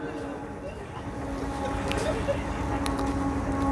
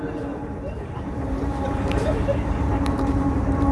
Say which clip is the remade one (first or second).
second